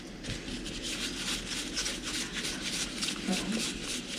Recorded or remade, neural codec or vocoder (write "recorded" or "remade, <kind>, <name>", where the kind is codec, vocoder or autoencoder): recorded